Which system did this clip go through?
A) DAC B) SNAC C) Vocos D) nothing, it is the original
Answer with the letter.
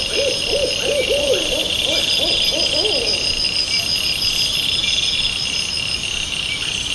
D